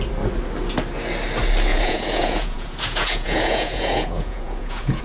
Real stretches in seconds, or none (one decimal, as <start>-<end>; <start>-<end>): 0.0-1.7